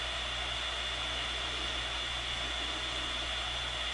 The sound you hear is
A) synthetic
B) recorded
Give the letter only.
B